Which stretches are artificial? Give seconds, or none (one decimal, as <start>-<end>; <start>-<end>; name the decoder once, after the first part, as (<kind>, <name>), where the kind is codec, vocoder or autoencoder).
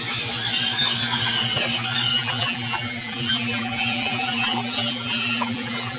2.1-6.0 (vocoder, BigVGAN v2)